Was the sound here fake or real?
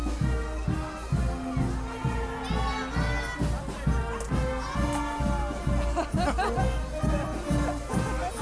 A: real